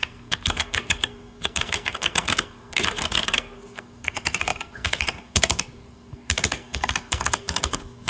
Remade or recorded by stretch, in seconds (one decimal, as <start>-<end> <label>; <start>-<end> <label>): 0.0-8.1 remade